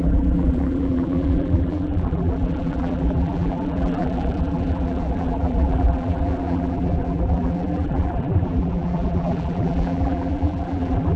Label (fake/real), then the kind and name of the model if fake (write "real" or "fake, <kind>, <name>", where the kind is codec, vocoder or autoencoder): fake, vocoder, BigVGAN v2